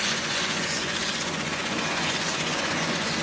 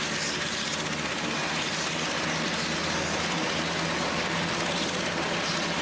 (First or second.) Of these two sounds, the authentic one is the second